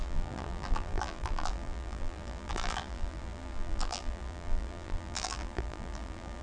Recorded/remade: remade